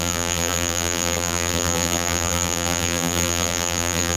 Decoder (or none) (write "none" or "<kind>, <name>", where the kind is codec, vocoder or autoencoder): vocoder, BigVGAN v2